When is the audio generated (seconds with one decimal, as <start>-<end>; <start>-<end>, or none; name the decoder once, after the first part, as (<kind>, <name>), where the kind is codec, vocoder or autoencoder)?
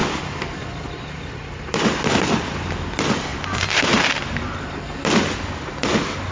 3.3-4.3 (vocoder, BigVGAN v2)